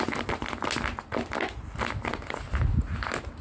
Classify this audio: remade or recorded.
recorded